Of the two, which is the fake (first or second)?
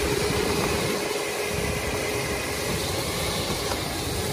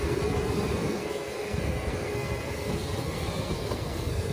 second